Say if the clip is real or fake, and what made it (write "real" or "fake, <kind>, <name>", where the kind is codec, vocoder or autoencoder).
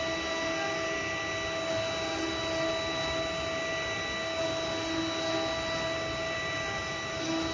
real